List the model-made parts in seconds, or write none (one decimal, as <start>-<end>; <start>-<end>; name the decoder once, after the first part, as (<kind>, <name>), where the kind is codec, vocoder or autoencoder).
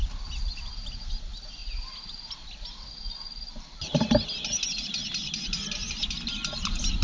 none